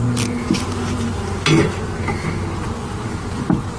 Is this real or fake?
real